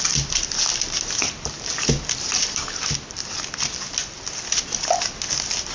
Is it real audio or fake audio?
real